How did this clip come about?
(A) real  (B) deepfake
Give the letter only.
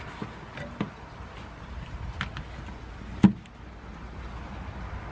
A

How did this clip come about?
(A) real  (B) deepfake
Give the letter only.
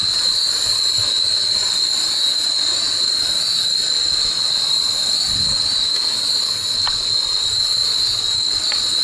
A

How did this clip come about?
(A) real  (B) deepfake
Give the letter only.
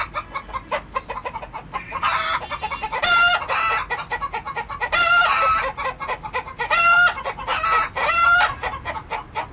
A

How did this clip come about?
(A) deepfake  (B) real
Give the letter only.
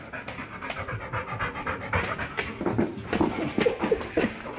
B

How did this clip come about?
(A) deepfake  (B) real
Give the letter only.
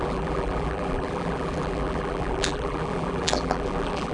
A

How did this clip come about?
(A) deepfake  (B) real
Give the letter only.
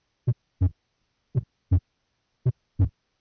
A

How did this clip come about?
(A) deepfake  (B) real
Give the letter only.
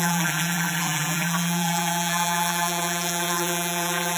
A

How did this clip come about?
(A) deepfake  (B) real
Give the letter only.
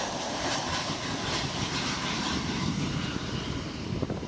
A